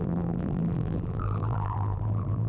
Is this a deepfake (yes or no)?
yes